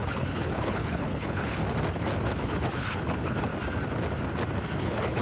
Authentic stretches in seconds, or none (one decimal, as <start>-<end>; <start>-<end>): 1.6-2.4; 3.5-4.8